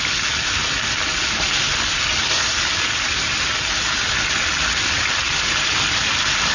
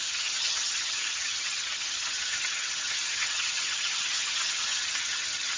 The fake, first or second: second